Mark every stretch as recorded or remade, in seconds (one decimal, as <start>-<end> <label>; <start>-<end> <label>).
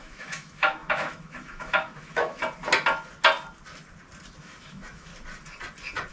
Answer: 0.0-2.4 remade; 2.4-4.4 recorded; 4.4-5.1 remade; 5.1-6.1 recorded